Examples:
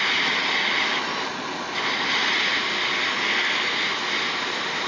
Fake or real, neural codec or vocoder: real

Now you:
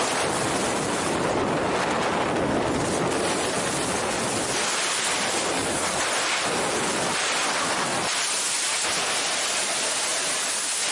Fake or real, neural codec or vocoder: real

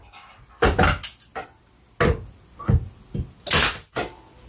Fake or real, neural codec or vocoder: real